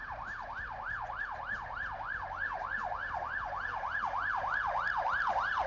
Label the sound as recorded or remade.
recorded